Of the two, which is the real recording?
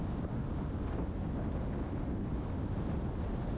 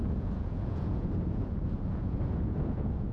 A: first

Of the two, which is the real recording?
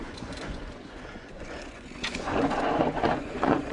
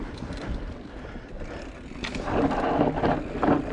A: second